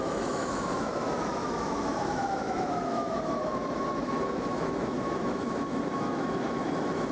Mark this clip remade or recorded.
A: remade